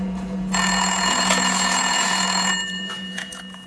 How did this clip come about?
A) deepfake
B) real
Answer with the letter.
A